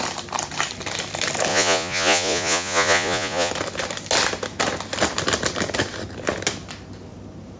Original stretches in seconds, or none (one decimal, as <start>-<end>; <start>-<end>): 0.0-1.5; 3.5-7.6